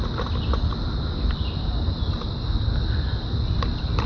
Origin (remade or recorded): recorded